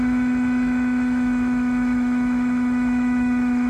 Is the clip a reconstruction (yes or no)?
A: yes